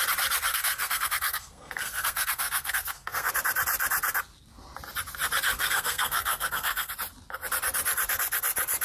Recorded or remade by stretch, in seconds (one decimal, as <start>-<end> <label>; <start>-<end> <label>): 0.0-0.5 recorded; 0.5-3.3 remade; 3.3-5.5 recorded; 5.5-6.9 remade; 6.9-8.8 recorded